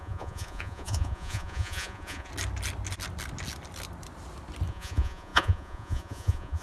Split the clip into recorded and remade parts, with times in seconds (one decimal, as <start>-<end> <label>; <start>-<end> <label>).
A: 0.0-2.3 remade; 2.3-4.7 recorded; 4.7-6.6 remade